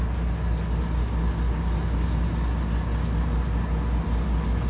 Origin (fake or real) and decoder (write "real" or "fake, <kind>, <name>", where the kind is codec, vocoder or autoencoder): real